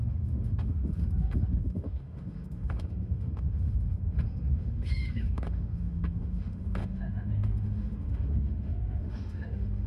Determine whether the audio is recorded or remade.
remade